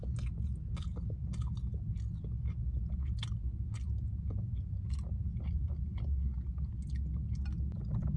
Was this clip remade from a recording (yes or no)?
no